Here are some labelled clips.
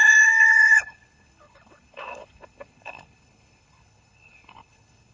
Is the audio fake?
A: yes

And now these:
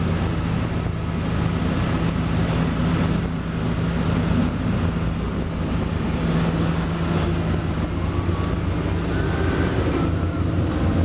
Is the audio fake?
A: no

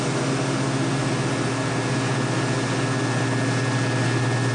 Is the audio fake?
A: no